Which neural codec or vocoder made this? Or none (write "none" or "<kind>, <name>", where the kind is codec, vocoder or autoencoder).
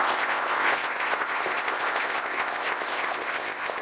codec, ZipCodec